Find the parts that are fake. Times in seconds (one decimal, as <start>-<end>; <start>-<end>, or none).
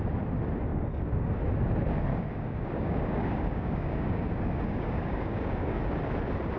0.7-1.4; 2.1-5.8